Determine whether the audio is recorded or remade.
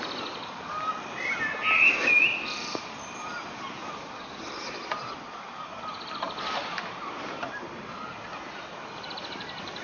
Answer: recorded